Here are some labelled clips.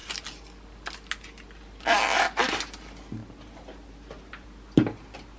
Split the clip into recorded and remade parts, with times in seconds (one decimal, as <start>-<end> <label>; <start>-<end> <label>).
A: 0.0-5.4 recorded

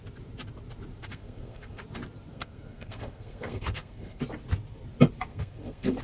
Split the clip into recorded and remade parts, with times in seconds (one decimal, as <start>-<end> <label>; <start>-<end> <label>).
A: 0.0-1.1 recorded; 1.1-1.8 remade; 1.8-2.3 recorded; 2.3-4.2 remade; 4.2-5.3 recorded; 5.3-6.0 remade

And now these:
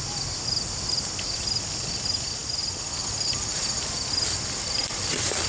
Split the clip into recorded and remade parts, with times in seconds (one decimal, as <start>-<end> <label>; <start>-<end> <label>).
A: 0.0-5.5 recorded